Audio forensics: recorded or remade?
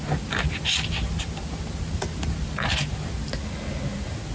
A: recorded